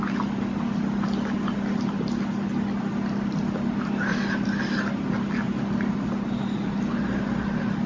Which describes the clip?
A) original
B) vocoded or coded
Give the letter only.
A